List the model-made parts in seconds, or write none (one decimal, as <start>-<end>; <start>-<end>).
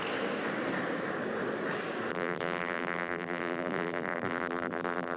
2.1-5.2